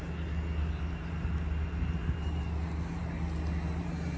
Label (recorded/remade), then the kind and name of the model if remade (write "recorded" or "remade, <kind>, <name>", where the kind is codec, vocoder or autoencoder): recorded